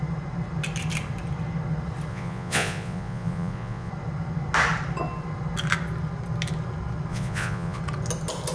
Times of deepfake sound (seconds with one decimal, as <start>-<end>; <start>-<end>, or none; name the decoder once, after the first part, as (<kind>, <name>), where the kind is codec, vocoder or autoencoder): 2.1-3.9 (vocoder, Vocos); 7.1-7.8